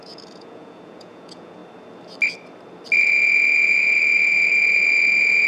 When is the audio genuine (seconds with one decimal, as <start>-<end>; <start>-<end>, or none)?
1.6-3.0